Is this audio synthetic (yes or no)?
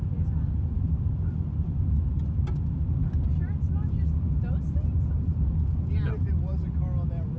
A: no